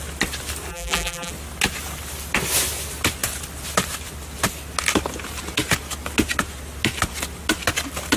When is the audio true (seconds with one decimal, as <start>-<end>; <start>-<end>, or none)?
0.0-0.7; 1.3-8.2